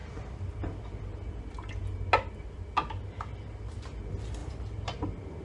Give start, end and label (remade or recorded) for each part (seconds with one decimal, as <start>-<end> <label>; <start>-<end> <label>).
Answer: 0.0-5.4 recorded